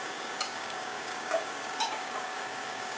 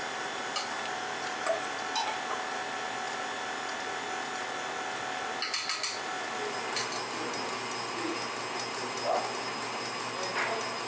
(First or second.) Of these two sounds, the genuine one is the second